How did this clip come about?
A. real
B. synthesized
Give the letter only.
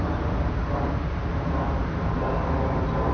A